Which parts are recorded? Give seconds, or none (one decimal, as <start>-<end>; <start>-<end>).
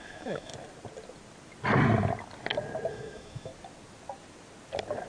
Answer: 0.5-2.9; 3.5-5.1